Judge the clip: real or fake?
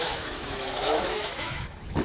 fake